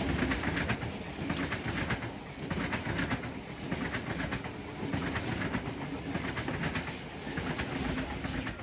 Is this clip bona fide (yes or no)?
yes